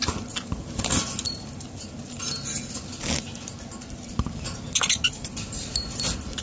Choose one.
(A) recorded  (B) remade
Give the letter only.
A